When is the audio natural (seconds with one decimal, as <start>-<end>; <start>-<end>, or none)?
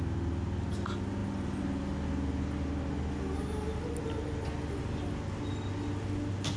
0.0-6.6